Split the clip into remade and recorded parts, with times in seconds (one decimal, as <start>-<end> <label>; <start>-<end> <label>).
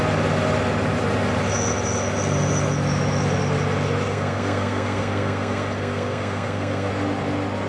0.0-4.1 recorded; 4.1-6.9 remade; 6.9-7.7 recorded